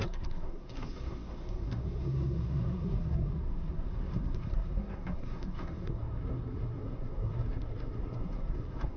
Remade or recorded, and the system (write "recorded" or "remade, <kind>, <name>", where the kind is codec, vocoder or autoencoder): remade, codec, SNAC